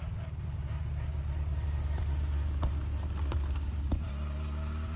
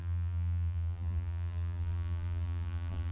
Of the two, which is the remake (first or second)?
second